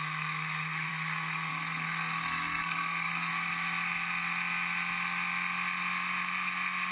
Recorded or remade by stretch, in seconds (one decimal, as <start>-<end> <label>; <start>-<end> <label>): 0.0-3.3 remade; 3.3-6.9 recorded